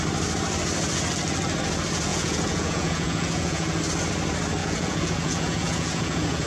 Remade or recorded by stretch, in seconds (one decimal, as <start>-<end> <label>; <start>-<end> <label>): 0.0-2.1 recorded; 2.1-3.8 remade; 3.8-4.6 recorded; 4.6-6.5 remade

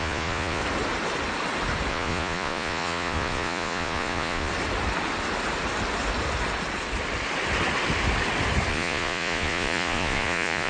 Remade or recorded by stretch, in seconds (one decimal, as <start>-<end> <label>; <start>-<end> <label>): 0.0-0.6 remade; 0.6-1.9 recorded; 1.9-4.5 remade; 4.5-8.7 recorded; 8.7-10.7 remade

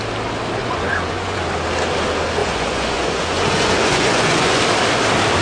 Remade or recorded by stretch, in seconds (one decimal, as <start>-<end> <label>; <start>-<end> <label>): 0.0-0.6 recorded; 0.6-1.4 remade; 1.4-2.4 recorded; 2.4-4.6 remade; 4.6-5.4 recorded